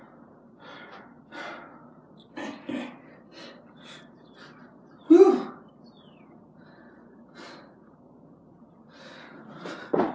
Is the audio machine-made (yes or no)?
no